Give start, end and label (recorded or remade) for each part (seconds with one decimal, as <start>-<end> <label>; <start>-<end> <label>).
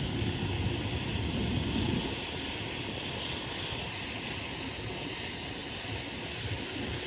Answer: 0.0-7.1 recorded